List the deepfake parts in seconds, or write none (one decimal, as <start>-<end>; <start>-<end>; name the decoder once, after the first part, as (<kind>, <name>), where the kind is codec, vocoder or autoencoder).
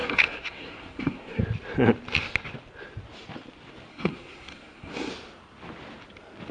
0.0-1.4 (codec, SNAC); 3.9-5.1